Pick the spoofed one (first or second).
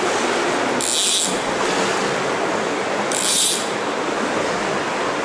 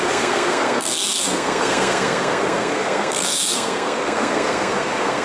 second